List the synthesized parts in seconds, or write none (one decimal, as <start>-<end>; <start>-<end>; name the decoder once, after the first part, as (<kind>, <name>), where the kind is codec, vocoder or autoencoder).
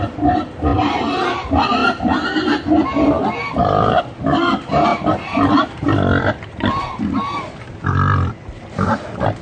0.0-1.8 (vocoder, BigVGAN v2); 4.0-4.9; 8.6-9.4